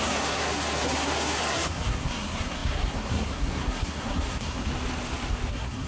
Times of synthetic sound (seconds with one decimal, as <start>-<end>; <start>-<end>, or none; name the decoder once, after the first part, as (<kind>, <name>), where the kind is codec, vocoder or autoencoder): 0.0-4.7 (codec, SNAC); 5.5-5.9